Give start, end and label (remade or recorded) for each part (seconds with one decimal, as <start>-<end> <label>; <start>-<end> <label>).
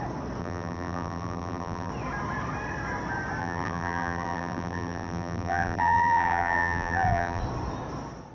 0.0-0.4 recorded; 0.4-1.9 remade; 1.9-3.4 recorded; 3.4-7.4 remade; 7.4-8.3 recorded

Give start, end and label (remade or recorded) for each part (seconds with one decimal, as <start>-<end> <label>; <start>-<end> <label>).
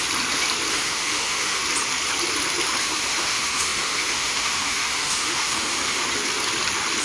0.0-0.7 recorded; 0.7-1.6 remade; 1.6-2.8 recorded; 2.8-6.0 remade; 6.0-7.0 recorded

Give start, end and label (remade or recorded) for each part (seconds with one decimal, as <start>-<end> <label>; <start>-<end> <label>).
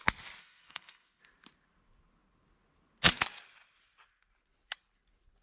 0.0-0.4 recorded; 0.4-1.2 remade; 1.2-5.4 recorded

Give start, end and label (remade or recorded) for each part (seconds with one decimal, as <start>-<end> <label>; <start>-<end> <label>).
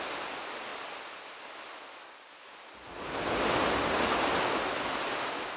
0.0-5.6 recorded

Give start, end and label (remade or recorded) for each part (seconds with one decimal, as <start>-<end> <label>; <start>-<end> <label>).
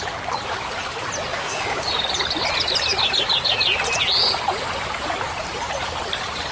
0.0-1.3 recorded; 1.3-1.9 remade; 1.9-6.5 recorded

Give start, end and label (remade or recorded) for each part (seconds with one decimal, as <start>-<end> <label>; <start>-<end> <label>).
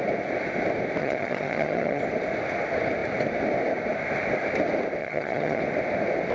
0.0-1.0 recorded; 1.0-2.0 remade; 2.0-5.0 recorded; 5.0-5.6 remade; 5.6-6.3 recorded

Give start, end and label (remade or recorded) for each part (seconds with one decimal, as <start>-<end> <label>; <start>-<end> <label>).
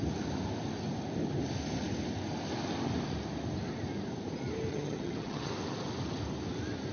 0.0-4.7 recorded; 4.7-5.5 remade; 5.5-6.9 recorded